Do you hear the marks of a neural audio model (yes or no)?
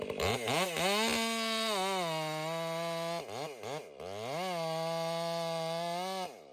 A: no